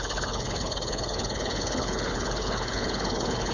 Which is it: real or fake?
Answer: fake